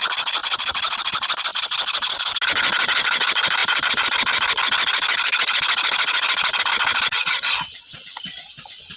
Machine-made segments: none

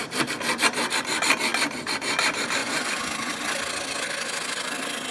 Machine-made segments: 2.6-3.4 (vocoder, Vocos)

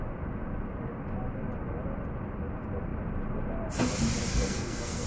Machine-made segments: 4.3-5.1 (codec, SNAC)

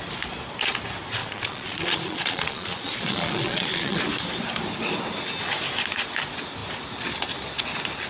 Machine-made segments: 1.2-4.0 (vocoder, Vocos)

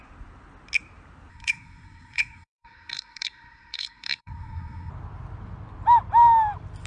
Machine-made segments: 1.3-4.9 (codec, SNAC)

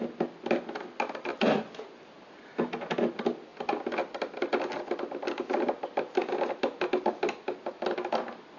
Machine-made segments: none